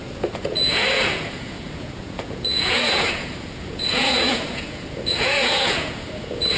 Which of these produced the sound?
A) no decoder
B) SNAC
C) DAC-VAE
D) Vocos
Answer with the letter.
D